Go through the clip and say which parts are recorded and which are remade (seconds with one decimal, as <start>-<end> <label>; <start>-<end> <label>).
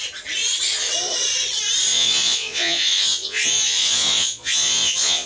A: 0.0-1.9 recorded; 1.9-5.3 remade